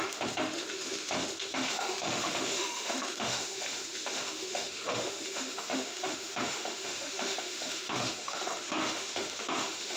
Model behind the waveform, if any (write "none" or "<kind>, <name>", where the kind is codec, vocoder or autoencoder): autoencoder, DAC-VAE